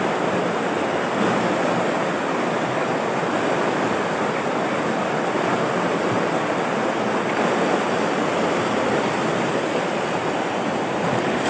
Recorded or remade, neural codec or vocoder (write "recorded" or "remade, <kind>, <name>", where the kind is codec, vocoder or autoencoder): recorded